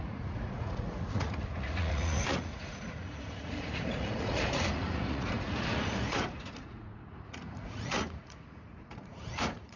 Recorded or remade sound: remade